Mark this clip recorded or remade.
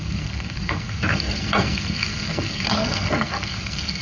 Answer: remade